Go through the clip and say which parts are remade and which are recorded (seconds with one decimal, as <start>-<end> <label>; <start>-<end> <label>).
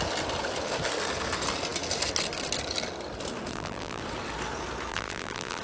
0.0-3.5 recorded; 3.5-4.0 remade; 4.0-4.9 recorded; 4.9-5.6 remade